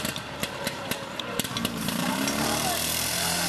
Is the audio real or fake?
fake